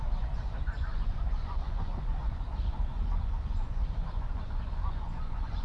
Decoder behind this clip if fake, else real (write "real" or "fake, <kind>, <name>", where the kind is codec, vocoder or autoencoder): fake, vocoder, Vocos